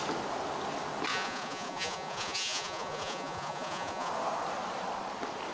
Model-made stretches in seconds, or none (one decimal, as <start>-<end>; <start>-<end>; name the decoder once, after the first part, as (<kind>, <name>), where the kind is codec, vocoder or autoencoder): 1.1-4.1 (vocoder, Vocos)

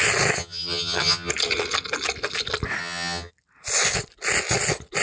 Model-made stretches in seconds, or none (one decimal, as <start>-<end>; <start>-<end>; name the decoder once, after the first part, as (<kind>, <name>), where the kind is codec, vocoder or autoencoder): 0.4-1.3 (vocoder, HiFi-GAN); 2.8-3.3

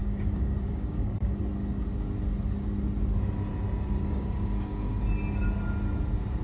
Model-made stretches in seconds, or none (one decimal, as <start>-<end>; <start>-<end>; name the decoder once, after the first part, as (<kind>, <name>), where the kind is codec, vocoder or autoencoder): 0.0-1.4 (codec, DAC); 4.0-5.0

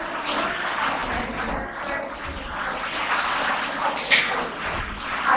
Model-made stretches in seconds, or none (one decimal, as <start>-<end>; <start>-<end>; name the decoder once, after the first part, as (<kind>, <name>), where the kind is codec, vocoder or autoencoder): none

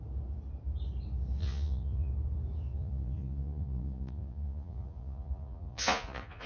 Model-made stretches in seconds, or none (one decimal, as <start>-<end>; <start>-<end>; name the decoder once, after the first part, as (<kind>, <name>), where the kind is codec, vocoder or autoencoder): 1.4-2.1 (vocoder, Vocos); 2.7-6.5

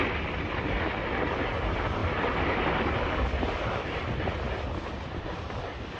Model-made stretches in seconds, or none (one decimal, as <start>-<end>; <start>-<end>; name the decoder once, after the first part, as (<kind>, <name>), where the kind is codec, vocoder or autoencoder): none

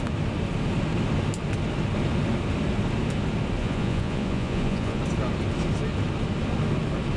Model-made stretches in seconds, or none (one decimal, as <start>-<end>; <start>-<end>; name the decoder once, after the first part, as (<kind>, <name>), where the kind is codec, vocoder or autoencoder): 3.6-5.0 (vocoder, Vocos)